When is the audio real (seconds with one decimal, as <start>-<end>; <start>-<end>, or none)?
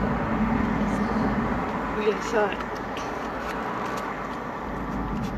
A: 0.0-5.4